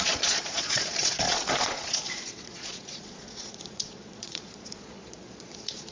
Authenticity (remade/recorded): remade